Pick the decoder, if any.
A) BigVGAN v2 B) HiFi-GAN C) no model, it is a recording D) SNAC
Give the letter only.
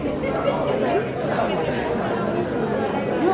C